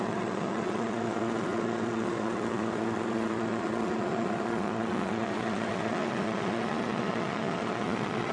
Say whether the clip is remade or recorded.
remade